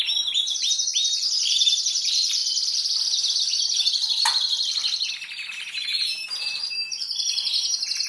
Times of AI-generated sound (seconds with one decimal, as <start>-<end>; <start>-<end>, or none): 5.9-7.4